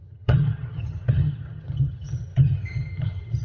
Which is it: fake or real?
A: fake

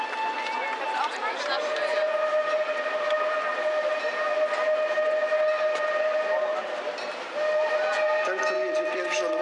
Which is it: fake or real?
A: real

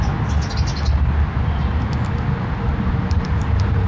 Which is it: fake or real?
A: real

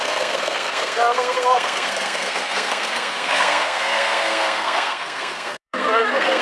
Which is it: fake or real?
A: fake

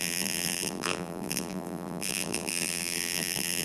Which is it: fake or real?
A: fake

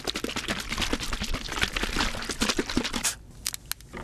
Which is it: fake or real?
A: real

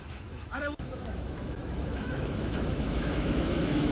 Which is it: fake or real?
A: fake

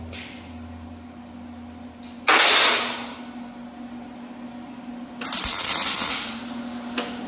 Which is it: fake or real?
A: real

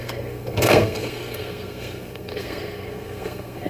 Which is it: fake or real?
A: fake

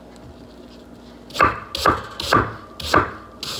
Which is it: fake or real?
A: real